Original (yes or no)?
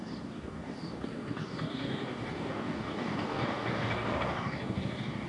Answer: no